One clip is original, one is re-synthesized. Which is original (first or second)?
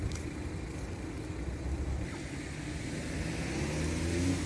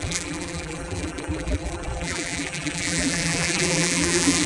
first